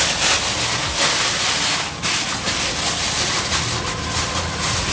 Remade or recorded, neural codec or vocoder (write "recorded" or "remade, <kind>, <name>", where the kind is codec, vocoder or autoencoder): recorded